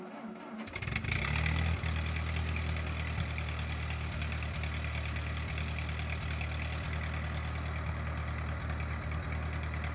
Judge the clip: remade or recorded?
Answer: recorded